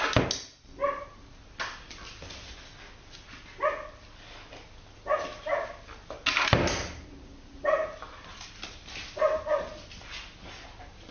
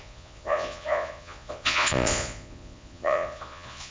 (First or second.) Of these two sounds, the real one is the first